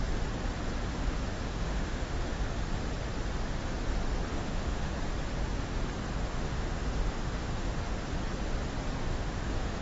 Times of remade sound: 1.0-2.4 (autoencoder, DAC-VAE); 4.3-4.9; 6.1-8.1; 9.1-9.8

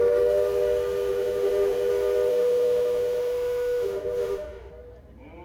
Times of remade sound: 1.1-1.9 (autoencoder, DAC-VAE); 2.3-4.7

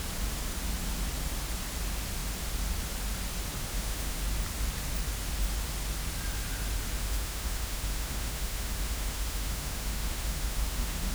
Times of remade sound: 3.7-4.2 (autoencoder, DAC-VAE); 7.0-11.1